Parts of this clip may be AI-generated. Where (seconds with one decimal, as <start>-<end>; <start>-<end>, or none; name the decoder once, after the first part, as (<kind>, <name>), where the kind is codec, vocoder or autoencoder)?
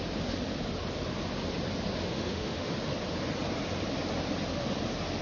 2.1-2.7 (autoencoder, DAC-VAE)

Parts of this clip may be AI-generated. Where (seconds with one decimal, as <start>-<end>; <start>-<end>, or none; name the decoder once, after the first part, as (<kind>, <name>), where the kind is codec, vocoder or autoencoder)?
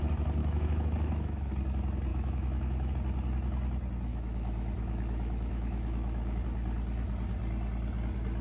0.4-1.5 (autoencoder, DAC-VAE); 2.1-2.9; 4.1-6.4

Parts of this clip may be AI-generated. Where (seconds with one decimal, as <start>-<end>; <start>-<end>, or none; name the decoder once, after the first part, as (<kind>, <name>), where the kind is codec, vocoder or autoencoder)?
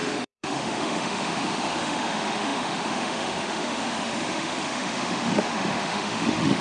0.0-6.6 (autoencoder, DAC-VAE)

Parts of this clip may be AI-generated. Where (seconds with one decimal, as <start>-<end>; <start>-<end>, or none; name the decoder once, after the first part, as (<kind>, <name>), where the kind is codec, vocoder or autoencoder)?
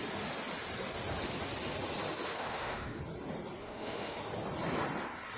2.3-3.0 (autoencoder, DAC-VAE); 3.6-4.2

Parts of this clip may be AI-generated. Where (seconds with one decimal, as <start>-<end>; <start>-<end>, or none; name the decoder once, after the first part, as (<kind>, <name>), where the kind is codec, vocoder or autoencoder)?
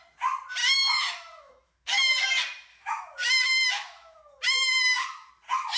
0.6-2.2 (autoencoder, DAC-VAE); 2.7-5.3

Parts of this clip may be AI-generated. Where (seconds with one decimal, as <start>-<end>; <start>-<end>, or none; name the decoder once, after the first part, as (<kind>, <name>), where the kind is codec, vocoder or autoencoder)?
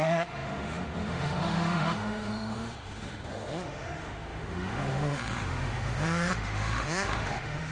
0.0-7.7 (autoencoder, DAC-VAE)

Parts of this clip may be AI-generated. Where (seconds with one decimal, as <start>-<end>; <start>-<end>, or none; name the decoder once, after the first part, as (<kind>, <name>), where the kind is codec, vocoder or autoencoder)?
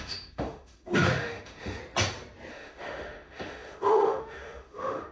0.0-1.8 (autoencoder, DAC-VAE); 2.5-5.1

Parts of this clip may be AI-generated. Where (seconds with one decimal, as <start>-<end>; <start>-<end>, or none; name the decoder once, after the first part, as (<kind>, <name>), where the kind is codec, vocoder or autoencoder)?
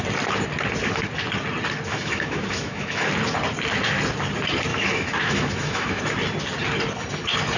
1.9-3.1 (autoencoder, DAC-VAE); 4.7-6.0